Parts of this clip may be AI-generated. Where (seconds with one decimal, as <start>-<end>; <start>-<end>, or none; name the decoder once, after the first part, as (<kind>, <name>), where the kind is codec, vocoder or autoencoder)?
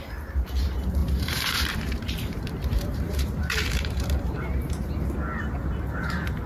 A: 1.0-4.9 (vocoder, BigVGAN v2)